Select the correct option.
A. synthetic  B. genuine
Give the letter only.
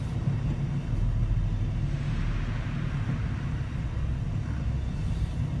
B